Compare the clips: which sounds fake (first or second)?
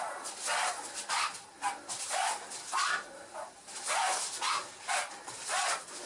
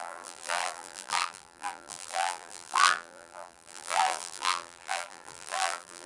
second